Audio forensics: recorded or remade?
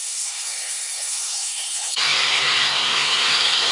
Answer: remade